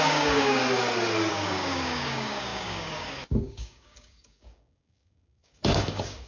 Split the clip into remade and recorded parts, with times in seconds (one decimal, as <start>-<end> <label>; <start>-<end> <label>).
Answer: 0.0-0.6 remade; 0.6-1.3 recorded; 1.3-6.3 remade